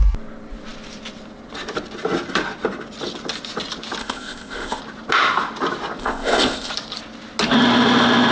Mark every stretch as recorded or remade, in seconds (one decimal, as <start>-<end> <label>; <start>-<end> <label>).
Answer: 0.0-4.0 recorded; 4.0-4.8 remade; 4.8-6.0 recorded; 6.0-6.7 remade; 6.7-8.3 recorded